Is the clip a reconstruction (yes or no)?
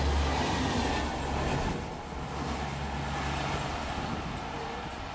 no